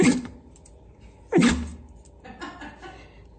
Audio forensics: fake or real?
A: real